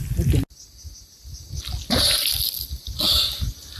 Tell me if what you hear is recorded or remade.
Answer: recorded